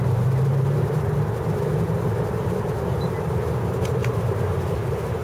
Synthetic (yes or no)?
yes